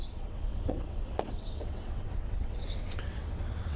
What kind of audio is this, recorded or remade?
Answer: remade